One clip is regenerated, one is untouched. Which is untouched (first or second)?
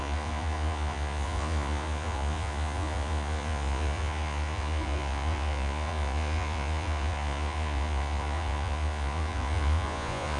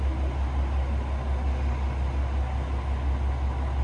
second